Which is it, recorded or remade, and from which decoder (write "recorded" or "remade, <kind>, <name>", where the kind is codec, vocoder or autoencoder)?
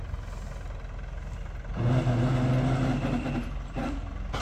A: recorded